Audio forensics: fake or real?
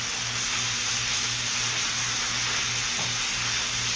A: real